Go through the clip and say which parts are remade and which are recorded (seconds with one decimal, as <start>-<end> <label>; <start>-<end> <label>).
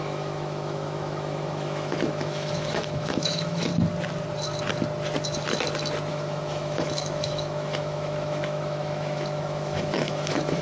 0.0-3.7 remade; 3.7-6.1 recorded; 6.1-10.6 remade